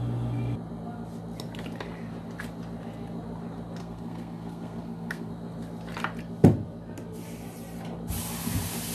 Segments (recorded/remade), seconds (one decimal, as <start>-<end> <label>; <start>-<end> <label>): 0.0-3.8 recorded; 3.8-5.3 remade; 5.3-8.9 recorded